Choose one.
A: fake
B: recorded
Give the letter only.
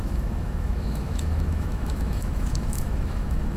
A